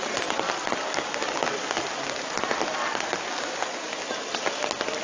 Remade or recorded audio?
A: recorded